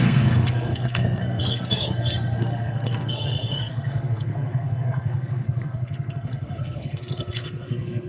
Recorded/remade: remade